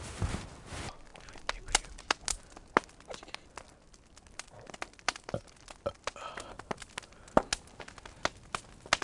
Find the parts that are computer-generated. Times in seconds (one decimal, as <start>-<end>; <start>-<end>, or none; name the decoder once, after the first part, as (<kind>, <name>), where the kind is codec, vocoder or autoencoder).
none